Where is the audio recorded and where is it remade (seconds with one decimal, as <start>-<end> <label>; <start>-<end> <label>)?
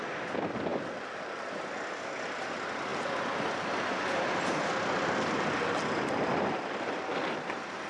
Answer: 0.0-7.9 recorded